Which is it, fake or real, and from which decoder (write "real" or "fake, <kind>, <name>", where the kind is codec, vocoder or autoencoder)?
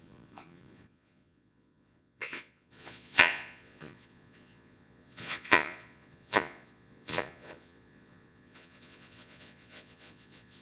fake, vocoder, Vocos